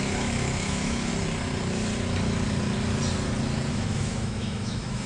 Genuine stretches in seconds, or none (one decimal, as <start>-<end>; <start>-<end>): 1.1-3.7